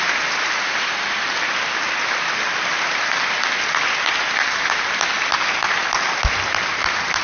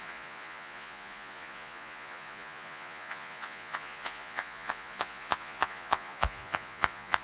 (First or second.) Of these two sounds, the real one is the first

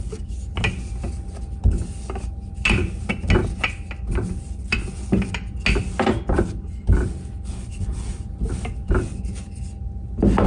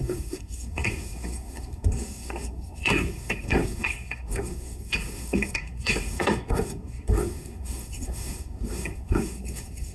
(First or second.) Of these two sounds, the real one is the first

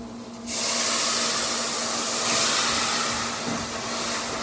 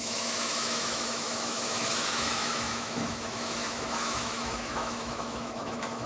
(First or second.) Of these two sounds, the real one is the first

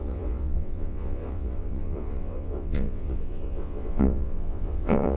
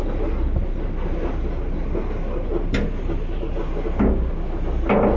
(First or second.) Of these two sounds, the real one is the second